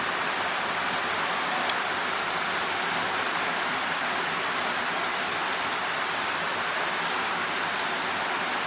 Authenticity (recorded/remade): recorded